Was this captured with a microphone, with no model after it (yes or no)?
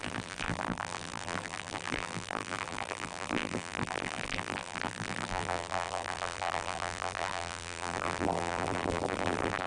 no